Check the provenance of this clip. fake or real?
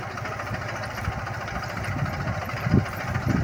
real